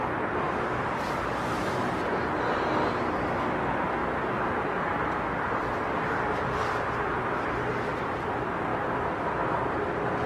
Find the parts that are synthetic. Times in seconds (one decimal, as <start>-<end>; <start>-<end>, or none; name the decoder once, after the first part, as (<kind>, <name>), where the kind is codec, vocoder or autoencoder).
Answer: 4.0-8.0 (vocoder, BigVGAN v2); 8.7-9.2